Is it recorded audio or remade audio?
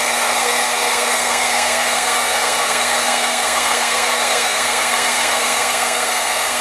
remade